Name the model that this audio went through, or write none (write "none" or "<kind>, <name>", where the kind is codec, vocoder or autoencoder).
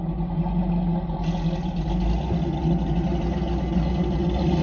none